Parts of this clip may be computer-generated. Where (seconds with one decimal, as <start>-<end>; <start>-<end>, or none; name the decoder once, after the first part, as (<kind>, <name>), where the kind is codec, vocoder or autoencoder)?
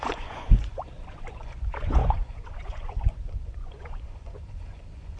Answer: 0.0-5.2 (vocoder, Vocos)